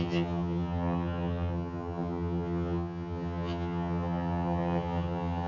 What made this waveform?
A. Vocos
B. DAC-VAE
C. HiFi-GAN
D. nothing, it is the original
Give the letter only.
C